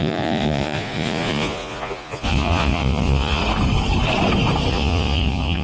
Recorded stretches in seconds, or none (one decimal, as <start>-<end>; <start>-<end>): 3.4-4.7